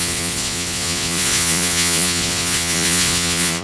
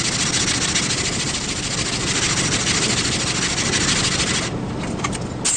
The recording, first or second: second